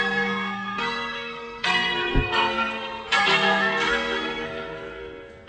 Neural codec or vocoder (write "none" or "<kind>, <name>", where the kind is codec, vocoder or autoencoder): codec, SNAC